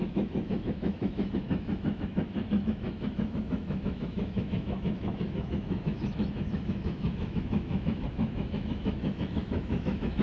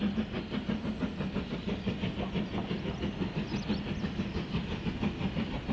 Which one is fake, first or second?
first